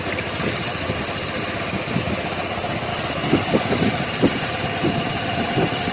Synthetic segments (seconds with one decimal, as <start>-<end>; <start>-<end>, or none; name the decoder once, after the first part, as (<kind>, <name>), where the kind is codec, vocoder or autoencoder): 2.9-4.0 (codec, DAC)